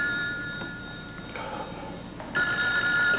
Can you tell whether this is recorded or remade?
recorded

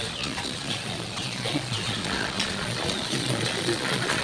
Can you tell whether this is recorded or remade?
remade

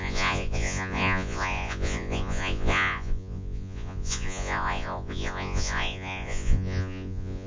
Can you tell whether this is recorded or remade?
remade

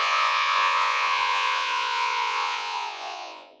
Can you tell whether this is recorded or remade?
remade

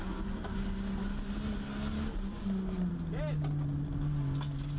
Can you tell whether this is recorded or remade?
recorded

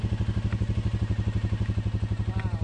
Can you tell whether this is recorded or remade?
recorded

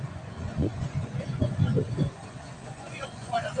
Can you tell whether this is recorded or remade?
remade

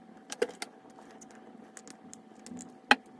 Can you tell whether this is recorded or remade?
recorded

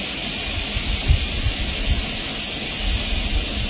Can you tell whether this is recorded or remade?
recorded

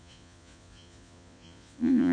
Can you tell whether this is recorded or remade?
remade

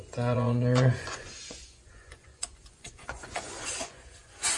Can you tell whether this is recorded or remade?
remade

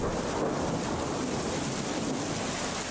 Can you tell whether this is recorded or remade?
recorded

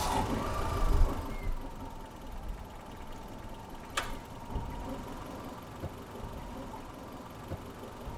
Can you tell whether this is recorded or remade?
recorded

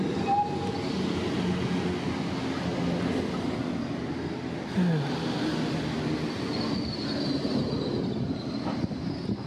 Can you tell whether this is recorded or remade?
recorded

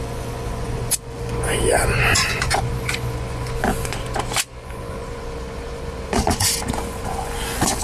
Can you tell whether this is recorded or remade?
remade